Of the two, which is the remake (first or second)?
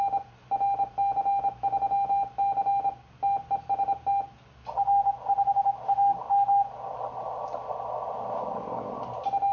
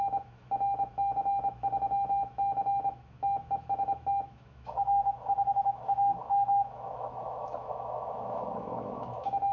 second